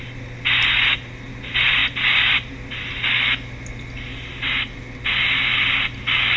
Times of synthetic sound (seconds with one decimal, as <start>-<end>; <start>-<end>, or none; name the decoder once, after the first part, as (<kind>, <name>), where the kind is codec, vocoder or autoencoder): none